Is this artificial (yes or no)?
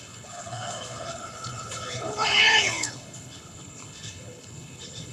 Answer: yes